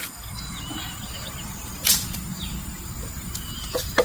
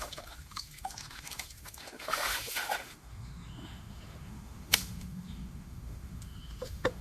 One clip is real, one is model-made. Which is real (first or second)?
first